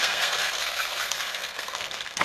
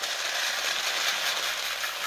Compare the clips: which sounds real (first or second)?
second